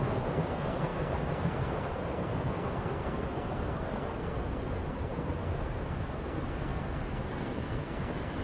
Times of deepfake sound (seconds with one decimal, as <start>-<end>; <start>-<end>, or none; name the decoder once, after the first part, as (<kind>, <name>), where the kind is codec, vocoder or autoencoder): 0.0-8.4 (codec, SNAC)